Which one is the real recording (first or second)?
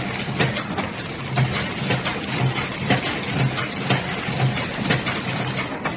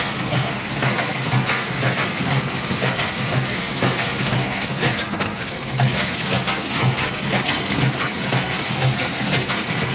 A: first